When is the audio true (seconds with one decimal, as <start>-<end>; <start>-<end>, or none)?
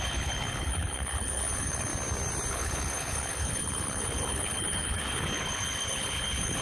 1.9-2.5